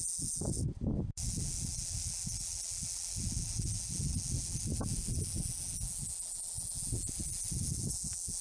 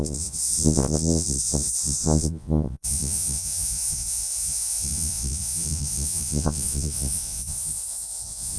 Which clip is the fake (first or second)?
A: second